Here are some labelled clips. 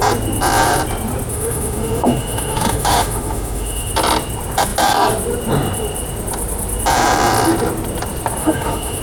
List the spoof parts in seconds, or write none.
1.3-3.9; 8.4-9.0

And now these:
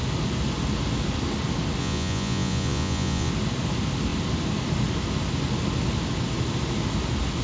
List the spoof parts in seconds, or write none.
1.8-3.3

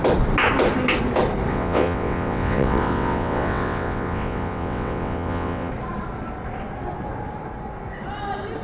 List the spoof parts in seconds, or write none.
1.5-5.7

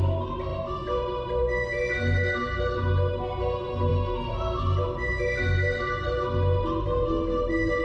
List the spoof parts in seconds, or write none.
none

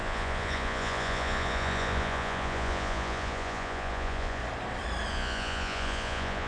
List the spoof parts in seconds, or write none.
0.0-4.4; 5.1-6.5

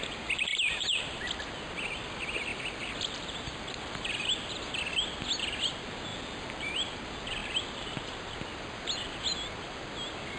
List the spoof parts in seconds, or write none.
0.5-1.2; 2.5-4.8; 6.1-6.7

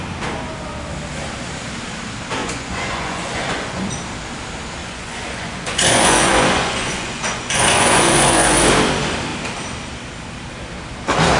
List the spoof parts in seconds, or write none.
2.4-3.9; 4.8-8.7